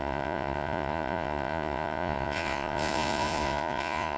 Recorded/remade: remade